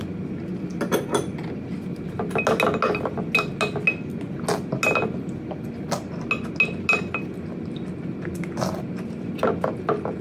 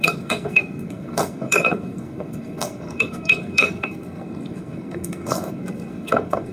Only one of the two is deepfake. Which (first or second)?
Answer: second